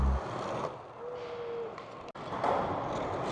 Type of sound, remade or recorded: recorded